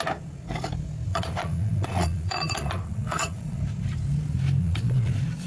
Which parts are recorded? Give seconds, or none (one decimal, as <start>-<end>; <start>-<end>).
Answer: 0.0-1.1; 3.6-4.6; 5.1-5.5